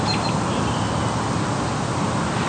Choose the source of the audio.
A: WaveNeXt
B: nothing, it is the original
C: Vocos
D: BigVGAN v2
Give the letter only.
B